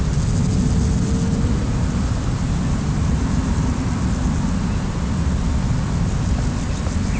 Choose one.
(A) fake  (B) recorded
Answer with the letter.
B